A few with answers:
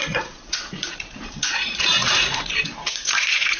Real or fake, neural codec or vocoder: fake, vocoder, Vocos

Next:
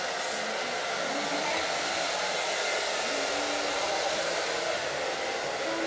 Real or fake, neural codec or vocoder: real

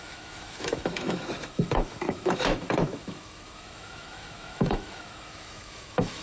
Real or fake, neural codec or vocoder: fake, autoencoder, DAC-VAE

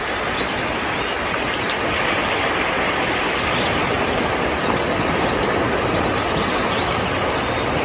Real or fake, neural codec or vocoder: real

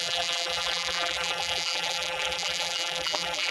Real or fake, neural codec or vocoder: fake, vocoder, BigVGAN v2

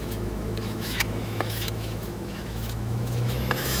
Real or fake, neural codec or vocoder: fake, autoencoder, DAC-VAE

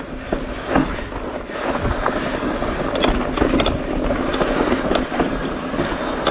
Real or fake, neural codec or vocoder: real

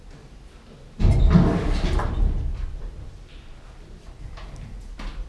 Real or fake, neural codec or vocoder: real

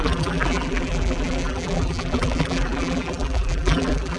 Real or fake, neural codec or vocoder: fake, vocoder, BigVGAN v2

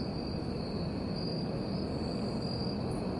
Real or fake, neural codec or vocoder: real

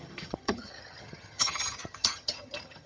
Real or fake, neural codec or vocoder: fake, vocoder, HiFi-GAN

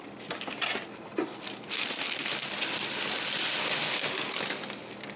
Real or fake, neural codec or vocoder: real